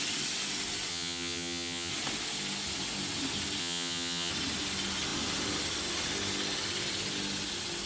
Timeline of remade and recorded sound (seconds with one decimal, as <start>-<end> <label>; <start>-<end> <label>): 0.0-0.9 recorded; 0.9-1.9 remade; 1.9-3.6 recorded; 3.6-4.3 remade; 4.3-7.9 recorded